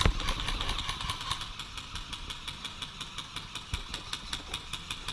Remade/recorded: recorded